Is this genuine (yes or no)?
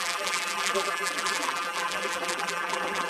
no